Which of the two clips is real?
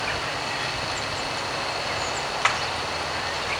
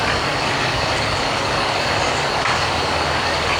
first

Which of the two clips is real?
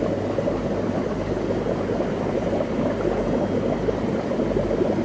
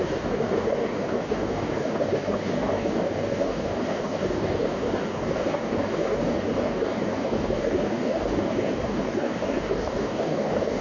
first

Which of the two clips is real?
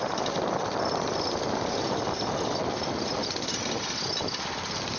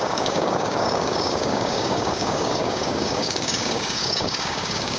first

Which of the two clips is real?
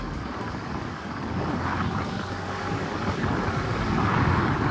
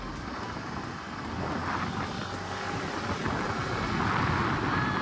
second